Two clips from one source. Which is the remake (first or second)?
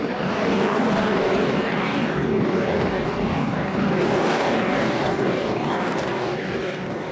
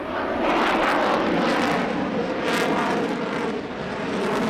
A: first